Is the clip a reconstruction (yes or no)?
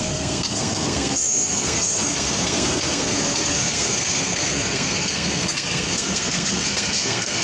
yes